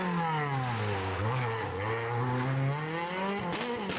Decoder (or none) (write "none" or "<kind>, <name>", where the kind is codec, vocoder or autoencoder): none